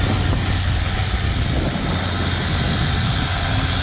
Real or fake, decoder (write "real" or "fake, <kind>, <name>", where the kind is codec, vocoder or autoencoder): real